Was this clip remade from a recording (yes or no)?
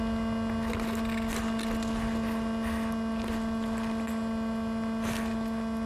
no